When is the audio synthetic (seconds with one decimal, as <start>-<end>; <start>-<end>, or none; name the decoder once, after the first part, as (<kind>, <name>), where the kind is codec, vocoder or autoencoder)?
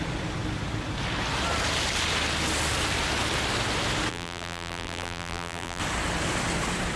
4.1-5.8 (vocoder, BigVGAN v2)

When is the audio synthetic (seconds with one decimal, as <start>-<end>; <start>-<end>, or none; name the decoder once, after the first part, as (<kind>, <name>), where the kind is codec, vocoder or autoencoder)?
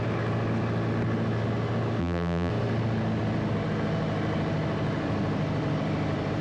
2.0-2.5 (vocoder, BigVGAN v2)